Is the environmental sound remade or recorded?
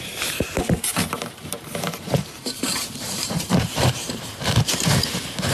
remade